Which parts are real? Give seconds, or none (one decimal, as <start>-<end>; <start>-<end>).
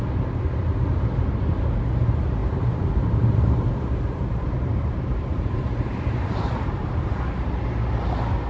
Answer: 0.0-2.4; 7.5-8.5